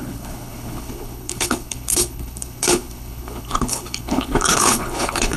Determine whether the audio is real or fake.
fake